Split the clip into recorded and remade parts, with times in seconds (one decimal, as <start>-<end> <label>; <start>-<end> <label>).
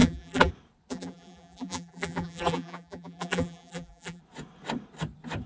0.0-0.5 remade; 0.5-0.9 recorded; 0.9-4.2 remade; 4.2-5.5 recorded